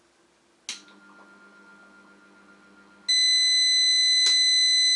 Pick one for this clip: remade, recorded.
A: recorded